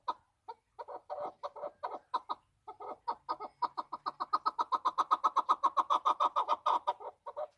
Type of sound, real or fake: real